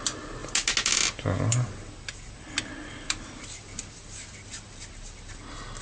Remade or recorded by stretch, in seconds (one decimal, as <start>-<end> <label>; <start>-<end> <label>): 0.0-5.8 recorded